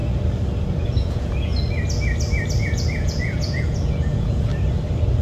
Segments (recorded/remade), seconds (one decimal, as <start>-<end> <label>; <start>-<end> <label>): 0.0-0.8 recorded; 0.8-1.5 remade; 1.5-2.6 recorded; 2.6-4.5 remade; 4.5-5.2 recorded